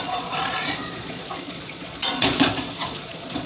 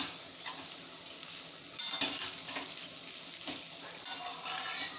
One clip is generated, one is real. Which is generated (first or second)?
first